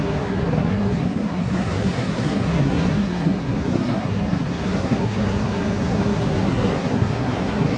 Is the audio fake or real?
fake